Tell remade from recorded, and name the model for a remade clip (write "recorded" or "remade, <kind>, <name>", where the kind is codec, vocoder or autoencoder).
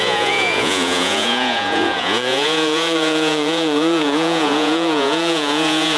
remade, vocoder, Vocos